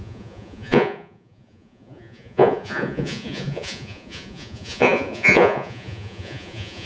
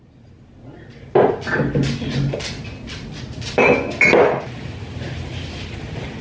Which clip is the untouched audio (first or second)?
second